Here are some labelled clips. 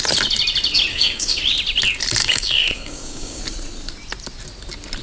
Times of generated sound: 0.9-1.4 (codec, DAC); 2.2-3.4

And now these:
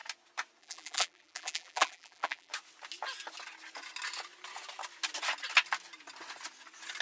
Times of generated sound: 0.6-2.5 (vocoder, BigVGAN v2)

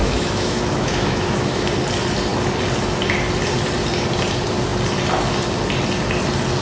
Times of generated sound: 0.0-1.7 (autoencoder, DAC-VAE)

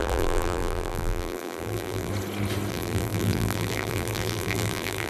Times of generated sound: 0.0-2.1 (vocoder, BigVGAN v2); 2.7-5.1

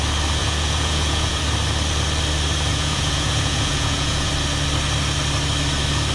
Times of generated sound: 0.4-1.4 (vocoder, Vocos); 2.7-4.3

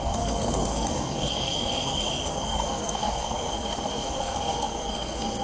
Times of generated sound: 0.0-5.4 (codec, SNAC)

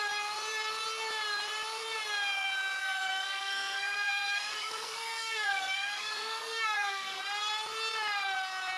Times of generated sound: 2.8-7.2 (codec, SNAC)

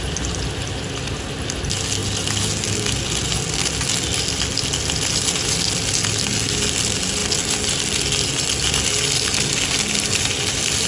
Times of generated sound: none